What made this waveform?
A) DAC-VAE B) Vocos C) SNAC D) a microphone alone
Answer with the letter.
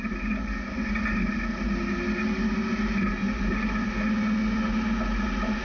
D